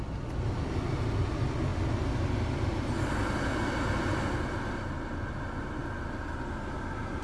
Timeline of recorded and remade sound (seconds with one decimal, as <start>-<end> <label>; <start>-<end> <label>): 0.0-7.2 recorded